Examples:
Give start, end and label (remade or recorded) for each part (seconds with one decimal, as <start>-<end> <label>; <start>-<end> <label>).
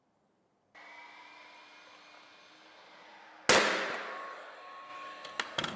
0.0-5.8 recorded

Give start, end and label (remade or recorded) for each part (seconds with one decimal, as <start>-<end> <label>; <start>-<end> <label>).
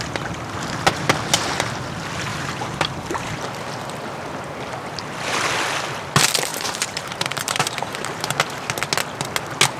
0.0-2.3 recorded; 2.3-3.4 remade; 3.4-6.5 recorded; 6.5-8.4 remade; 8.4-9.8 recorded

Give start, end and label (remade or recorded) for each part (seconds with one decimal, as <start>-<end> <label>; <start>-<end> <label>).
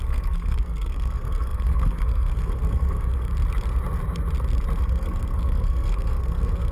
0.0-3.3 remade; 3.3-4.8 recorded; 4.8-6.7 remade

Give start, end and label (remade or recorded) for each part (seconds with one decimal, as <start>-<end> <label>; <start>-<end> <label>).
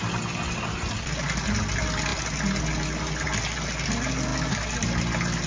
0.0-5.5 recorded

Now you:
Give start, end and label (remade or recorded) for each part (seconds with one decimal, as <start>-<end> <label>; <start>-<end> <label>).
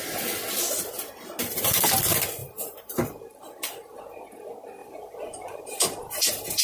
0.0-1.4 recorded; 1.4-2.0 remade; 2.0-2.4 recorded; 2.4-4.0 remade; 4.0-4.8 recorded; 4.8-6.6 remade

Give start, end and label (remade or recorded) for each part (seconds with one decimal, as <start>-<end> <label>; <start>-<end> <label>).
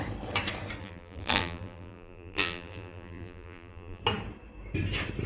0.0-0.8 recorded; 0.8-4.0 remade; 4.0-5.3 recorded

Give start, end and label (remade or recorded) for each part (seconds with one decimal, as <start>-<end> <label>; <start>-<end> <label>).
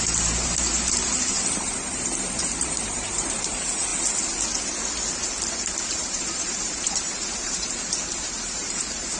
0.0-3.9 remade; 3.9-5.9 recorded; 5.9-9.2 remade